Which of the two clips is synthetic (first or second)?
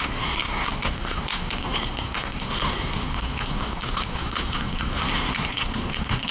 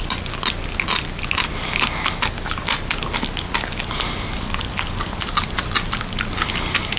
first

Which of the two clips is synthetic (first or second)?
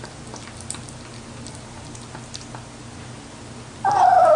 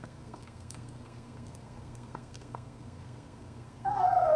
second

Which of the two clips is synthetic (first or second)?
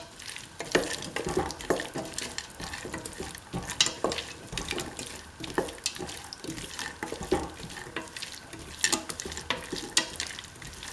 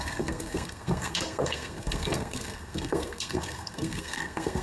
second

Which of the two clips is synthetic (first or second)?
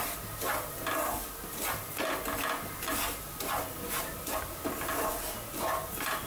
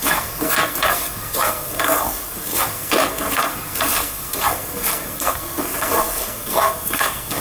second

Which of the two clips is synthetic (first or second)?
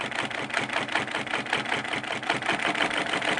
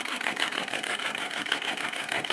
second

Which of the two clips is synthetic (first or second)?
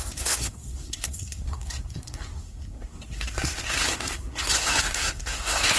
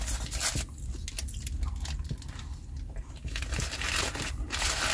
first